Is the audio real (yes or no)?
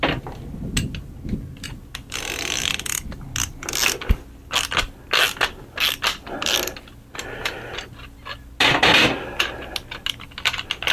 yes